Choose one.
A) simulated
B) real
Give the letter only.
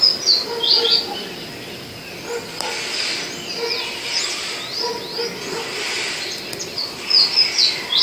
B